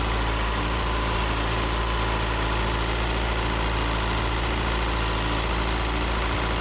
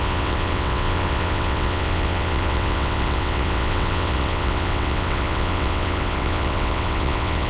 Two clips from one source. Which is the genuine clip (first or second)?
first